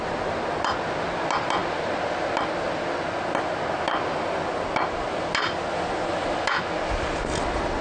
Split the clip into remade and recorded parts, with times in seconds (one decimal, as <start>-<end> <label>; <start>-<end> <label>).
0.0-7.8 recorded